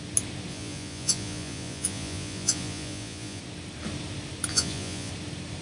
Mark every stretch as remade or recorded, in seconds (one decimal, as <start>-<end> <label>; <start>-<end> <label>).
0.0-0.5 recorded; 0.5-3.4 remade; 3.4-4.5 recorded; 4.5-5.1 remade; 5.1-5.6 recorded

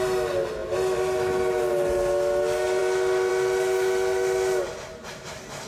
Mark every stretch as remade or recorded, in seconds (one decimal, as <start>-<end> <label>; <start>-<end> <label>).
0.0-5.7 recorded